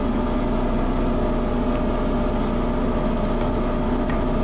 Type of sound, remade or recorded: recorded